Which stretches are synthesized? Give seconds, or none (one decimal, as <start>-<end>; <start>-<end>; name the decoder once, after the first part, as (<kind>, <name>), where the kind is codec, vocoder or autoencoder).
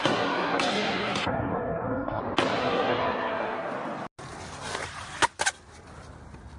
0.0-2.2 (codec, SNAC); 2.6-3.7